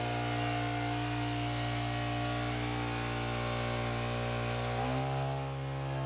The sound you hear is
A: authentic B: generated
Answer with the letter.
A